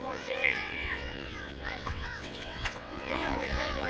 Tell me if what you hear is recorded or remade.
remade